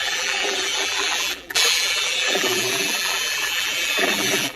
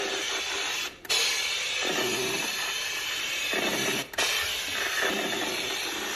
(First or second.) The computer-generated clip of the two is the first